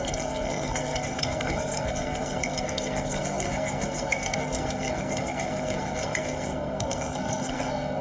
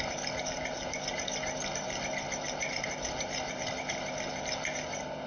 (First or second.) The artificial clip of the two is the first